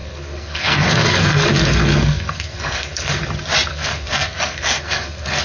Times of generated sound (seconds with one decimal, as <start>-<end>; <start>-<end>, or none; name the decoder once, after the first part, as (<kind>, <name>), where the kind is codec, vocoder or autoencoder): 0.0-3.2 (codec, SNAC); 3.7-5.4